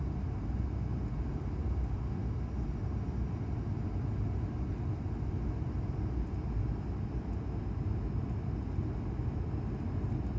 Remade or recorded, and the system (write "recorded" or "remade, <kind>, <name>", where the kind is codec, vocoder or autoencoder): recorded